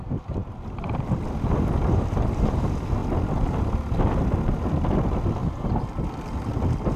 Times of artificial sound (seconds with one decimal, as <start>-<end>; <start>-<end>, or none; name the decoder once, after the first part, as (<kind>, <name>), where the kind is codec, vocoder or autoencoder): none